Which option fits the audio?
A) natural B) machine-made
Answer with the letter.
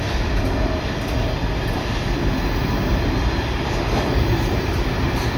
A